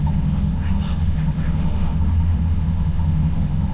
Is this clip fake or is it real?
fake